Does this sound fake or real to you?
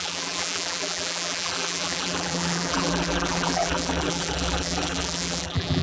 fake